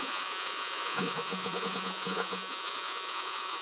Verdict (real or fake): fake